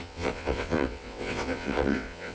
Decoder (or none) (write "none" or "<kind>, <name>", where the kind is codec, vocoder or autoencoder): vocoder, WaveNeXt